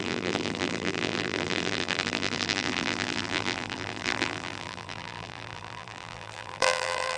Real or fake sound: fake